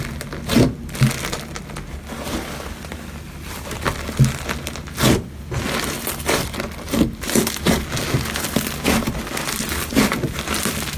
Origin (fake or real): real